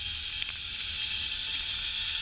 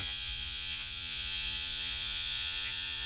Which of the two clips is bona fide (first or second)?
first